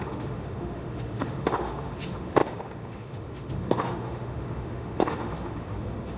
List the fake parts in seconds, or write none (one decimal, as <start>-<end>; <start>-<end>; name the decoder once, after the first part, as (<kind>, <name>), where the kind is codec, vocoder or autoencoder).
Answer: 0.0-6.2 (autoencoder, DAC-VAE)